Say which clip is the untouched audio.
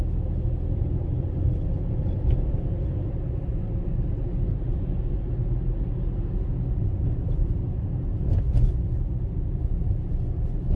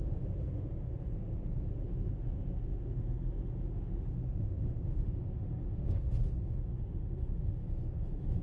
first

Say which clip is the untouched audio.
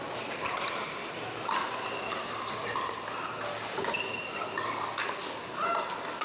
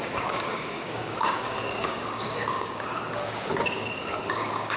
first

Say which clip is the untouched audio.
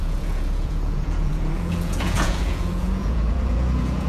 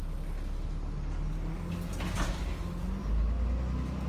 second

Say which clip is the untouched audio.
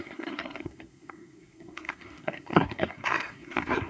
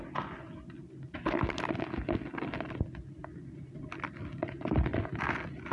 second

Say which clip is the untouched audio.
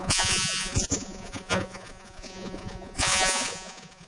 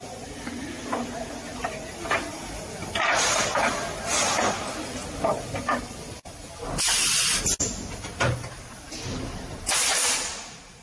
second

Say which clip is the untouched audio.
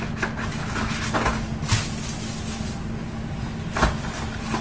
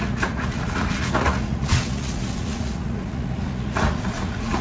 first